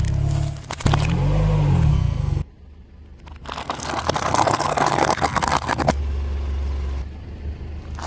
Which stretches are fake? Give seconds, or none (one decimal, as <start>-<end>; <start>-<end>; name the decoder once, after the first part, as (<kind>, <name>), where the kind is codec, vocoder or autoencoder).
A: 1.9-2.5 (codec, SNAC); 3.6-6.0